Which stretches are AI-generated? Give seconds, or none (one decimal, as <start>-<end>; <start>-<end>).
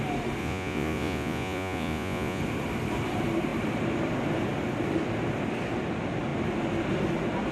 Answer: 0.4-2.4